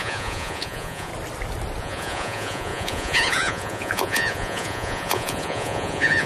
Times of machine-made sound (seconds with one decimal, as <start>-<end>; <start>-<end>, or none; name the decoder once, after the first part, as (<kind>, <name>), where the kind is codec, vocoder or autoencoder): 0.0-1.1 (vocoder, Vocos); 1.8-6.3